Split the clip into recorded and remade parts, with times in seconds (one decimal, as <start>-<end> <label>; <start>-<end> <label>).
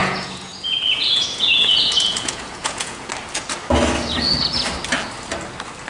0.0-3.1 remade; 3.1-5.9 recorded